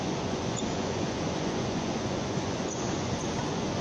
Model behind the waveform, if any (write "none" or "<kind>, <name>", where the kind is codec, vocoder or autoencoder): vocoder, Vocos